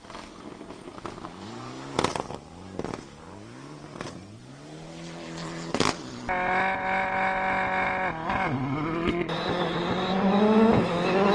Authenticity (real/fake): real